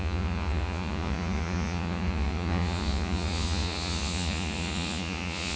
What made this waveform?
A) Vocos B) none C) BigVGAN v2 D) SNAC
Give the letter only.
A